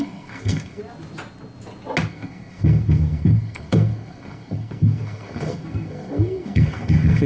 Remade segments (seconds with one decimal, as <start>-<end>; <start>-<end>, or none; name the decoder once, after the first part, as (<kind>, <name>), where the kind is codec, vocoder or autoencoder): 0.0-0.8 (codec, SNAC); 2.1-7.3